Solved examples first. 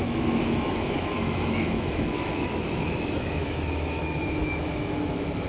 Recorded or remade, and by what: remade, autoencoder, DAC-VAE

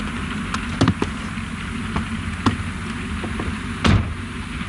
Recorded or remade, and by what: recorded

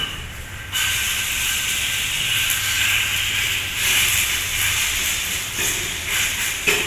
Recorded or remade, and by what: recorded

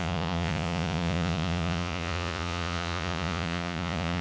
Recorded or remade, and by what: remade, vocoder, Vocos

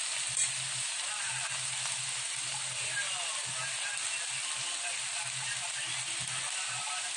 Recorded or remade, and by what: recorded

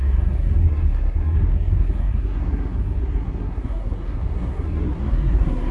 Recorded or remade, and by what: remade, codec, SNAC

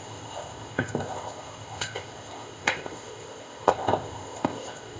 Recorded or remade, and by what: remade, codec, ZipCodec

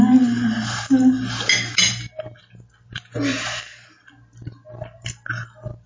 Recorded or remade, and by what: recorded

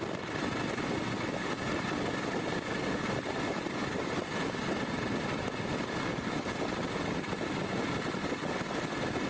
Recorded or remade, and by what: recorded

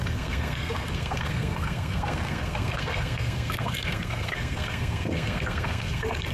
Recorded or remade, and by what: remade, codec, SNAC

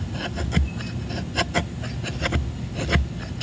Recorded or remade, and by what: recorded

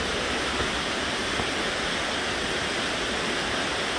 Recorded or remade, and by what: recorded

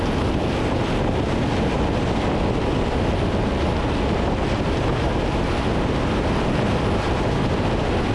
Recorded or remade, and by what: recorded